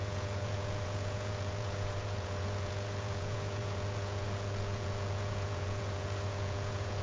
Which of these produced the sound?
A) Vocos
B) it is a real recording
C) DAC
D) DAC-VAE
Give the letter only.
A